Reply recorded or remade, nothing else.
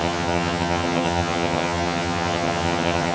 remade